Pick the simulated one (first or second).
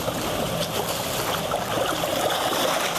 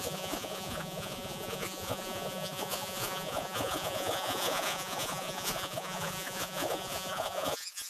second